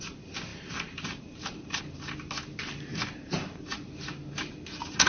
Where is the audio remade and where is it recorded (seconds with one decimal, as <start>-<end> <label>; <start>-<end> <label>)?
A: 0.0-0.5 recorded; 0.5-1.8 remade; 1.8-2.9 recorded; 2.9-3.9 remade; 3.9-5.1 recorded